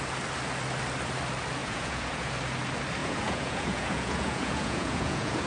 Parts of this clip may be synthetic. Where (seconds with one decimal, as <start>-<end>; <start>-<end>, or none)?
1.6-2.3; 3.0-5.5